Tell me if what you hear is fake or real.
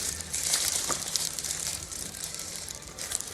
fake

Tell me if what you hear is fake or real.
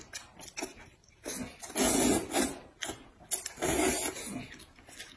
real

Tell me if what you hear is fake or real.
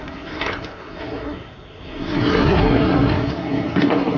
fake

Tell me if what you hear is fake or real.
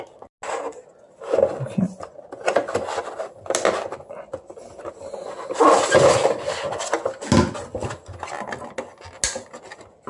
real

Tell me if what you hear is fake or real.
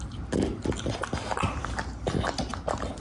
real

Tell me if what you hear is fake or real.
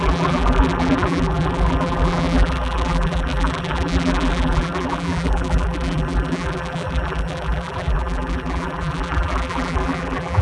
fake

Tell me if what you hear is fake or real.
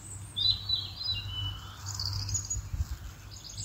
real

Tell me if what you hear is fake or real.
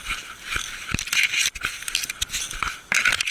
real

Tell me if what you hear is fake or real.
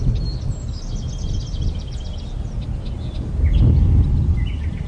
real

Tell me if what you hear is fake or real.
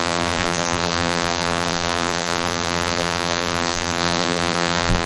fake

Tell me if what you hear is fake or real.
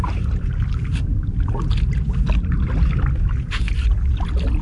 real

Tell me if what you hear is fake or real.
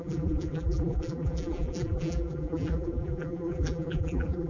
fake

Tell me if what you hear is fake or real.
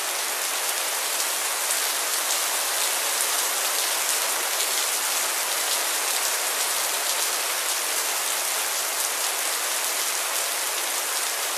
real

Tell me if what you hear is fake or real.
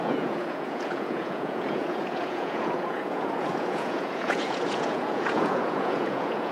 fake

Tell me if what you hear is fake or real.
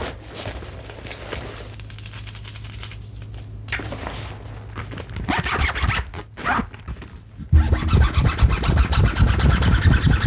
real